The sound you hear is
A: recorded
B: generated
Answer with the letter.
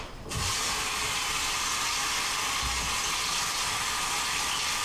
A